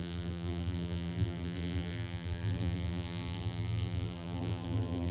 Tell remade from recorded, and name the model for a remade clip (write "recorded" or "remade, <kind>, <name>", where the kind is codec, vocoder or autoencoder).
remade, vocoder, BigVGAN v2